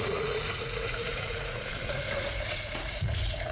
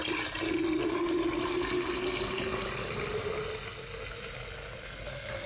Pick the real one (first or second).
second